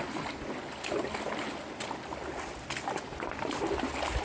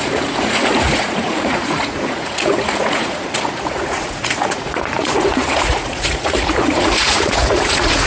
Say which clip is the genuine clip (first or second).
first